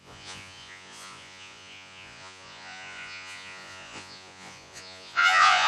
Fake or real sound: fake